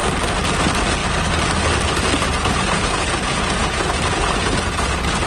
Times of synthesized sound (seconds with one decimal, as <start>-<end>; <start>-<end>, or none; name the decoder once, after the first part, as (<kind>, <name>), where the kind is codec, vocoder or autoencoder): 2.3-5.3 (vocoder, Vocos)